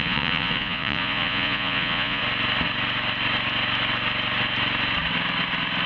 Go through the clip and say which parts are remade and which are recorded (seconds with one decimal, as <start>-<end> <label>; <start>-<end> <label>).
0.0-2.2 remade; 2.2-5.9 recorded